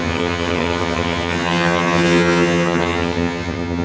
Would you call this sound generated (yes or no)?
yes